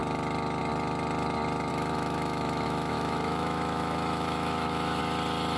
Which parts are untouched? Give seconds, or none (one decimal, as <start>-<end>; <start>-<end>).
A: 0.0-1.7; 5.0-5.6